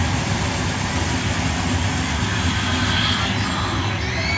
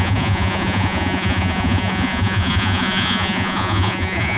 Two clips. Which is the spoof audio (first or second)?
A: second